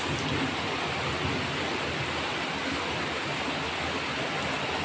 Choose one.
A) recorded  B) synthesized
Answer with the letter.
A